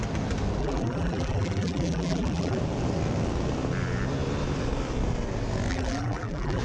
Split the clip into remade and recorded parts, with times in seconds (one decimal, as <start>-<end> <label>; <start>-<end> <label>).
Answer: 0.0-0.6 recorded; 0.6-2.6 remade; 2.6-5.7 recorded; 5.7-6.6 remade